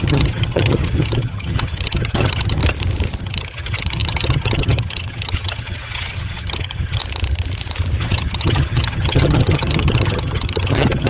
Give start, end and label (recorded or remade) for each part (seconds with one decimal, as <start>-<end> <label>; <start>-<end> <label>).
0.0-2.6 remade; 2.6-3.2 recorded; 3.2-7.0 remade; 7.0-8.0 recorded; 8.0-11.1 remade